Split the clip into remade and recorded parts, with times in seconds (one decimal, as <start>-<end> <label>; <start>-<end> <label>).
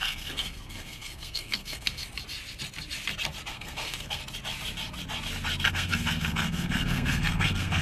0.0-2.0 remade; 2.0-3.5 recorded; 3.5-4.2 remade; 4.2-5.7 recorded; 5.7-7.8 remade